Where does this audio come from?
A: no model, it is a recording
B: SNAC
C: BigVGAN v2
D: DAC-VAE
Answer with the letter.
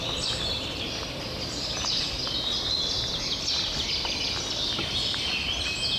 A